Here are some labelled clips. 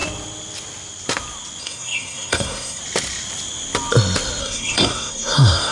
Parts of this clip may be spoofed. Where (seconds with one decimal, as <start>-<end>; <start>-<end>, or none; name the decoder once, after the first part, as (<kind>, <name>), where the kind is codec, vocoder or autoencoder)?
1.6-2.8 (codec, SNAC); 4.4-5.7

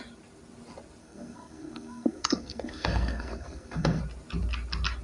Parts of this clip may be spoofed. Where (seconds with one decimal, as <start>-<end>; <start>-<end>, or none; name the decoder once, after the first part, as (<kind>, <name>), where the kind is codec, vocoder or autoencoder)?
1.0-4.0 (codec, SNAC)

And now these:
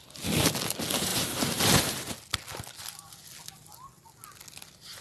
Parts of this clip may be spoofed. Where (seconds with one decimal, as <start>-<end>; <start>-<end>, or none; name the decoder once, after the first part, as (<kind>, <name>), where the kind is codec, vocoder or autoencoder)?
none

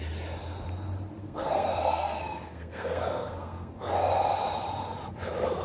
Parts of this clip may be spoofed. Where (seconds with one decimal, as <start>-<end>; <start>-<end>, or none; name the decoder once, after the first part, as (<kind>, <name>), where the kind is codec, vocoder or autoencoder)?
1.2-3.7 (codec, SNAC)

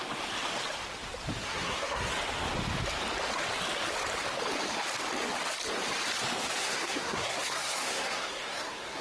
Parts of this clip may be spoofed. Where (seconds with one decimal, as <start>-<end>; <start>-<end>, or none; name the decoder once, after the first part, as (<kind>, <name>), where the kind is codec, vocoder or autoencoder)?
1.4-2.1 (codec, SNAC); 6.6-9.0

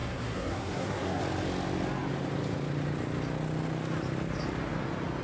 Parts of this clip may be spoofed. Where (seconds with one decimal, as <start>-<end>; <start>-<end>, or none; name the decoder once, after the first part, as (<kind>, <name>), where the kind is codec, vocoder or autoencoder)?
0.0-1.2 (codec, SNAC)

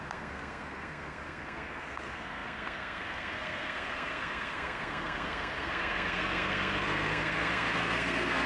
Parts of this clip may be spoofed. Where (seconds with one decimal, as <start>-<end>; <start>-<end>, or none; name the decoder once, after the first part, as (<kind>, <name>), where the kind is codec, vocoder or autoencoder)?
0.0-8.5 (codec, SNAC)